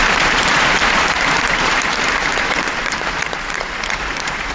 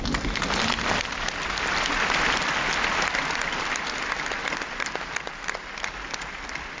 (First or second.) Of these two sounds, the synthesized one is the first